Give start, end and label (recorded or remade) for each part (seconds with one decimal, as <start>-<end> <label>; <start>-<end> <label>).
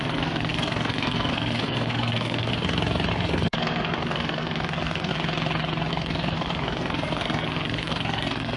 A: 0.0-2.5 remade; 2.5-3.1 recorded; 3.1-5.1 remade; 5.1-5.9 recorded; 5.9-8.6 remade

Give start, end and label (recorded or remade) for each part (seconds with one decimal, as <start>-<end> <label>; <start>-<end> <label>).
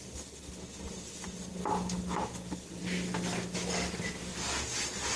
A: 0.0-5.2 recorded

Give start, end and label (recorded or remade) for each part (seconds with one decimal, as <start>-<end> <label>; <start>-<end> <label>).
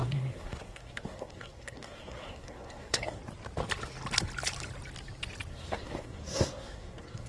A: 0.0-3.2 remade; 3.2-5.5 recorded; 5.5-7.3 remade